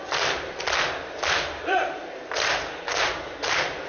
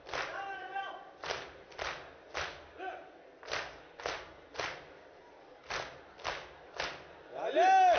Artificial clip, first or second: first